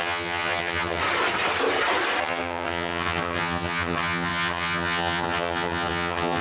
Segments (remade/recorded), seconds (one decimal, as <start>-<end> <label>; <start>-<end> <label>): 0.0-1.0 remade; 1.0-2.2 recorded; 2.2-6.4 remade